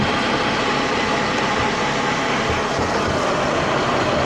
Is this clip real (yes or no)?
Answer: yes